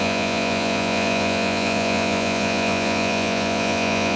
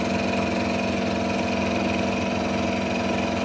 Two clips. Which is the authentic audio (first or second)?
second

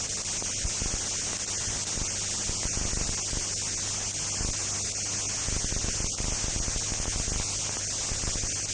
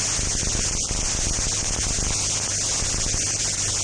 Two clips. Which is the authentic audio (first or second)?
first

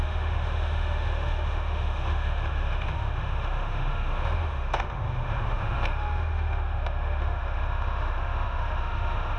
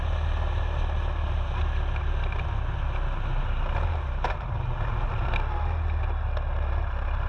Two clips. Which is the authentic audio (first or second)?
second